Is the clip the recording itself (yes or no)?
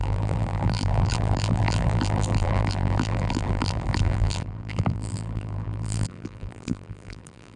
no